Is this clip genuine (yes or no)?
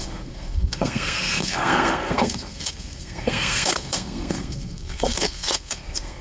no